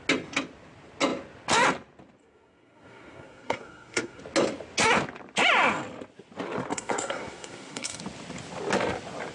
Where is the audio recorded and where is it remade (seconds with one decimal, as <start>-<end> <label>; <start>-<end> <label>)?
0.0-2.2 recorded; 2.2-4.2 remade; 4.2-6.7 recorded; 6.7-8.0 remade; 8.0-9.3 recorded